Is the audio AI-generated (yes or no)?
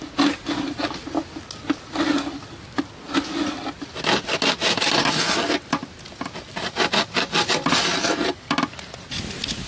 no